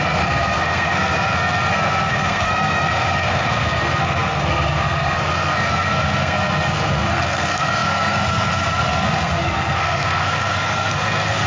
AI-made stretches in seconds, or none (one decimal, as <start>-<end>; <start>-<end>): 0.0-11.5